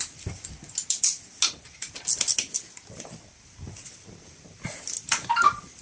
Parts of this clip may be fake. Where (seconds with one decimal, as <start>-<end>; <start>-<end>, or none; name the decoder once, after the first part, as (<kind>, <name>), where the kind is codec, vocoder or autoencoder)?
none